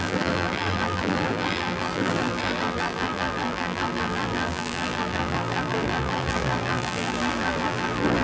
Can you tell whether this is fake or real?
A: fake